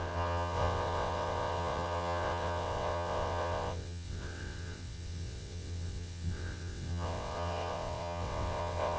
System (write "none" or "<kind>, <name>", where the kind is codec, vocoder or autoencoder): vocoder, WaveNeXt